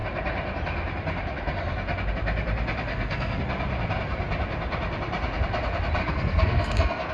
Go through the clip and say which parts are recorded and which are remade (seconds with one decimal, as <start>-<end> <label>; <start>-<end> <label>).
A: 0.0-2.9 recorded; 2.9-3.4 remade; 3.4-6.0 recorded; 6.0-7.1 remade